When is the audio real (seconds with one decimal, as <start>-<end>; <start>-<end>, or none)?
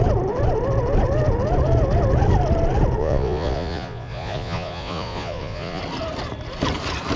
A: 0.0-3.0; 5.8-7.2